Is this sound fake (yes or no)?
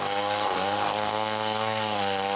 yes